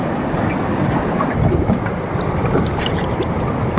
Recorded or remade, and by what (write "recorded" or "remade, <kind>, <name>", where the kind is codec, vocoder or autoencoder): recorded